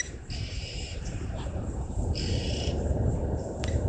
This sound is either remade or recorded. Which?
remade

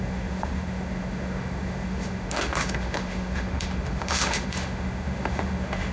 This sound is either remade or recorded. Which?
remade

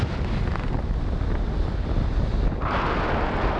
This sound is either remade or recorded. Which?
recorded